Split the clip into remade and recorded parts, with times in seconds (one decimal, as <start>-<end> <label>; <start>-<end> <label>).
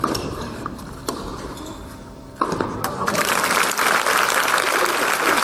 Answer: 0.0-1.3 recorded; 1.3-2.2 remade; 2.2-5.4 recorded